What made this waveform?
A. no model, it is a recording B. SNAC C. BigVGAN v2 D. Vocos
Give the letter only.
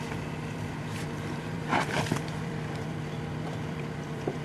C